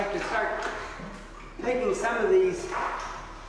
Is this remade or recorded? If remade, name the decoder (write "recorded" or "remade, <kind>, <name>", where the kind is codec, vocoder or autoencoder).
recorded